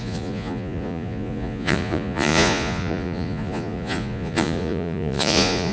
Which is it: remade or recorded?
remade